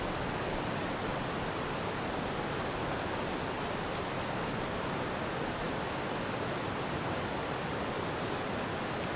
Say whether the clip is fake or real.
real